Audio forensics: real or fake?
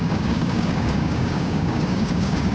fake